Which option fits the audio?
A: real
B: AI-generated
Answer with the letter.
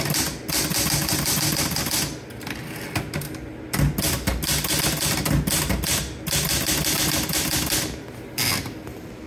A